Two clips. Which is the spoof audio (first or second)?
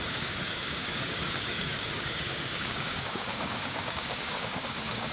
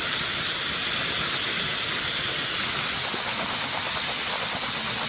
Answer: first